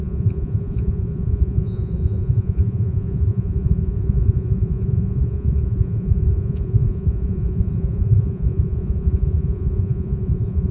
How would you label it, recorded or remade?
remade